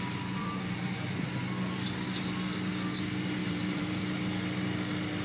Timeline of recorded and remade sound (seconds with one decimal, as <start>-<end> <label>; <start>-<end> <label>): 0.0-0.4 recorded; 0.4-1.1 remade; 1.1-3.4 recorded; 3.4-4.0 remade; 4.0-5.2 recorded